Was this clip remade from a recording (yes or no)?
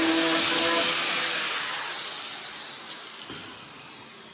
no